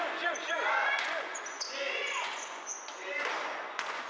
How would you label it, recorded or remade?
remade